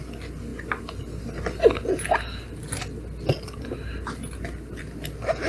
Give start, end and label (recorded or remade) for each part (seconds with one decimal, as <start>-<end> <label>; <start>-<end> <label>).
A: 0.0-5.5 recorded